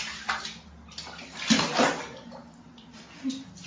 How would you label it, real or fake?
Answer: real